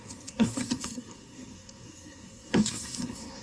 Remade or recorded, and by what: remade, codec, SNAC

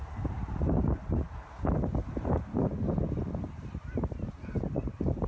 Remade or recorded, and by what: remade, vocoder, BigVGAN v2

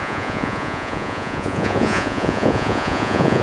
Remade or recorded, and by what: remade, vocoder, Vocos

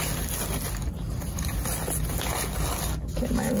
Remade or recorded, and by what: recorded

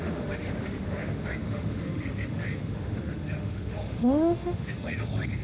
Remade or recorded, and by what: remade, autoencoder, DAC-VAE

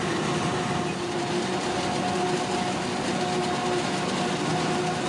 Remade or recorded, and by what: recorded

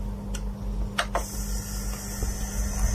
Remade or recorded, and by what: recorded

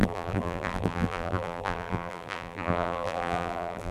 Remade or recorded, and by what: remade, vocoder, BigVGAN v2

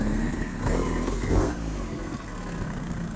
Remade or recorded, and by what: remade, codec, SNAC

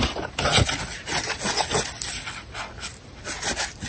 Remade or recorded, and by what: recorded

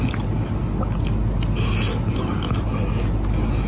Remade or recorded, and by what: recorded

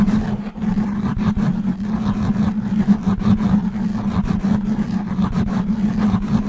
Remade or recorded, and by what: recorded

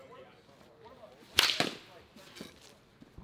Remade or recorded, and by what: recorded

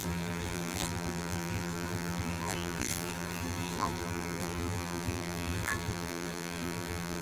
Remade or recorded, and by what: remade, vocoder, BigVGAN v2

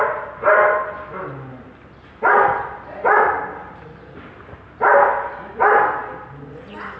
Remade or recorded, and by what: recorded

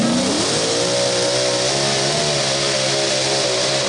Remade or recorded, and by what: recorded